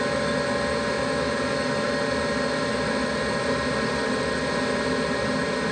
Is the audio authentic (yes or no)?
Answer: yes